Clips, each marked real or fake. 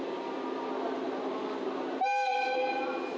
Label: real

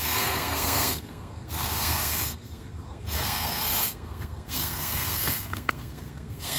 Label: fake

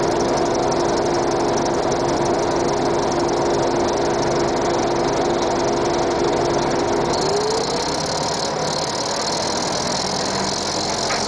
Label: real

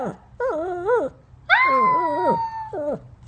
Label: real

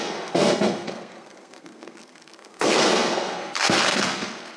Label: fake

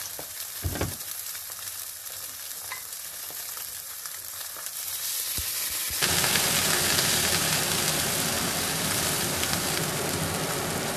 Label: fake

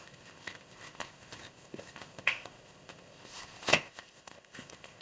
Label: fake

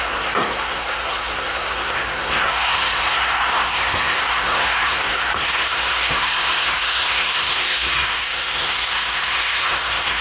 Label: fake